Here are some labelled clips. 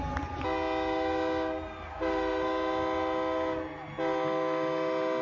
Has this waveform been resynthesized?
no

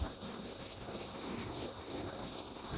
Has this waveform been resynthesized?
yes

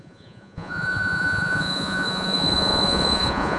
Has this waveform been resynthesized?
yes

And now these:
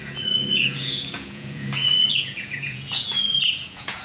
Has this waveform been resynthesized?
yes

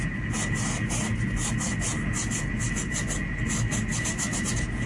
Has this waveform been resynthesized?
no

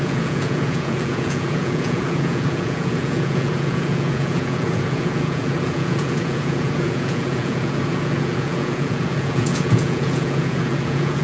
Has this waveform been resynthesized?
yes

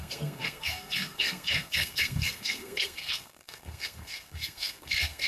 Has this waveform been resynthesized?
yes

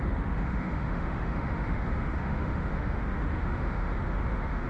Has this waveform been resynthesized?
yes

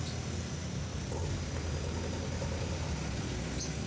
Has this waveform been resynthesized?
no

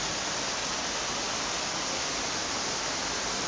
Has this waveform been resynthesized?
no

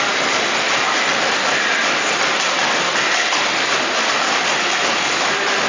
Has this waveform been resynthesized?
no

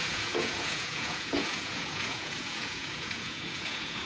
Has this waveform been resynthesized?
yes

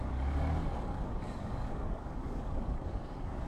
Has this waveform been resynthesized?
yes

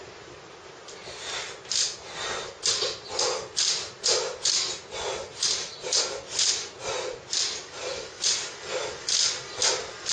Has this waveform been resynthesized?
no